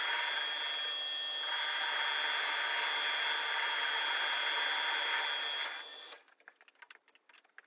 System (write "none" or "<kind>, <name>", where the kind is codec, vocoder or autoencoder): none